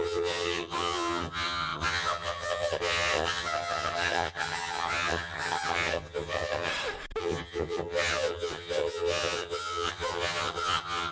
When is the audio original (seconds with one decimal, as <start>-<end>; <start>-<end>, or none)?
6.7-7.2